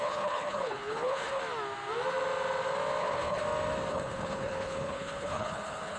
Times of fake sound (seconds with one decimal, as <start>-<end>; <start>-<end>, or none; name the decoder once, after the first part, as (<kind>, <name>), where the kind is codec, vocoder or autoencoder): 0.0-1.4 (codec, HILCodec); 3.0-3.4; 3.9-6.0